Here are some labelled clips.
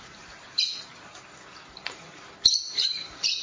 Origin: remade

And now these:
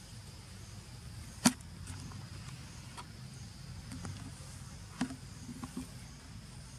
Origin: recorded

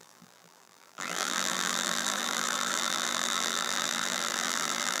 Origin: remade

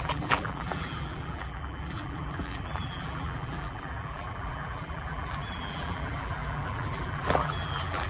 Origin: remade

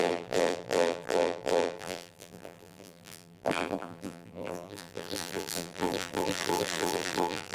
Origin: remade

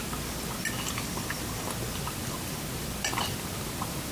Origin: recorded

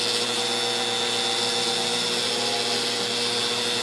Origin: recorded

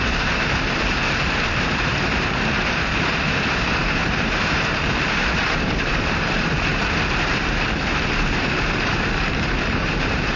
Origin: remade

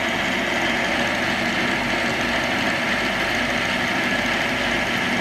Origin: recorded